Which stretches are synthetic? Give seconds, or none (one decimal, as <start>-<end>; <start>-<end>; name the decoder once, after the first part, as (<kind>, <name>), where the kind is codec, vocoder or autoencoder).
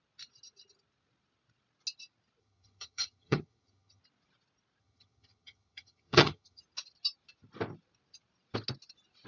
2.4-4.0 (vocoder, HiFi-GAN); 4.8-6.6